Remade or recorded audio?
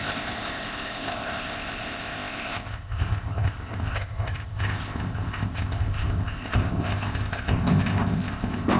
remade